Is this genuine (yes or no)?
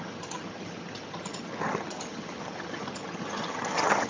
no